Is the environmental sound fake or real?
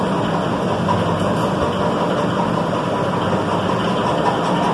real